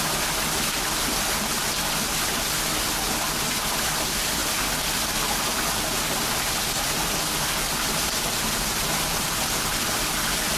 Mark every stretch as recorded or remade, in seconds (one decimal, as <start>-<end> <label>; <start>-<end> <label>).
0.0-10.6 recorded